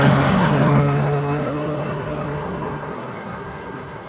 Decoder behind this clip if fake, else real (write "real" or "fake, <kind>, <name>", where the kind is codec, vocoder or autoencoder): fake, codec, SNAC